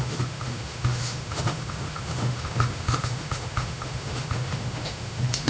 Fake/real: fake